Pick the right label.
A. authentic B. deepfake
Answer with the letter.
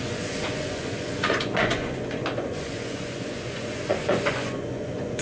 B